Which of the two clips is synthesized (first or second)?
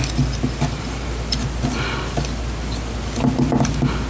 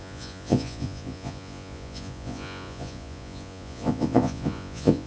second